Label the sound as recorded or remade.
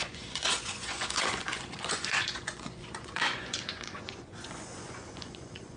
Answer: remade